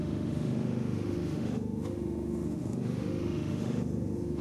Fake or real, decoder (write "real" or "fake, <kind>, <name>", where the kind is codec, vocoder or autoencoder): fake, autoencoder, DAC-VAE